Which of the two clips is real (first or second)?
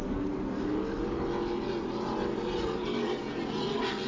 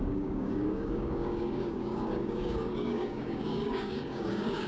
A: first